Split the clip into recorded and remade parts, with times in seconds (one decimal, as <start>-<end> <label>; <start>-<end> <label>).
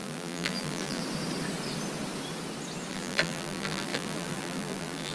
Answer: 0.0-1.0 remade; 1.0-2.9 recorded; 2.9-5.1 remade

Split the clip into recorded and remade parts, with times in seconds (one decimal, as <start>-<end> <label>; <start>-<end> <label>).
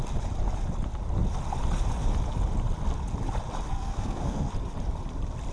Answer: 0.0-3.7 recorded; 3.7-4.5 remade; 4.5-5.5 recorded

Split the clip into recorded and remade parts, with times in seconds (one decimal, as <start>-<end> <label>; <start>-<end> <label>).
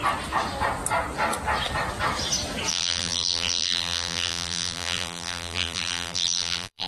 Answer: 0.0-2.7 recorded; 2.7-6.9 remade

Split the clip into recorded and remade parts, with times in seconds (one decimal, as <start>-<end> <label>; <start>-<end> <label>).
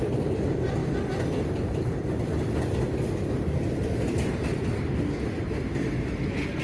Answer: 0.0-0.8 recorded; 0.8-4.1 remade; 4.1-6.6 recorded